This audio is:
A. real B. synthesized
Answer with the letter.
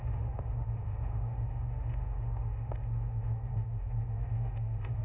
B